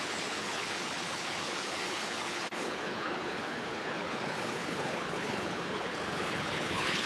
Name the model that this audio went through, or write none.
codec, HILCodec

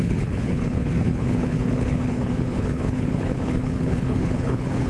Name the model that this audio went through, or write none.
codec, HILCodec